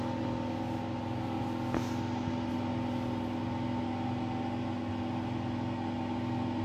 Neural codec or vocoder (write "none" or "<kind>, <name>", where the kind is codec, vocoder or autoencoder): none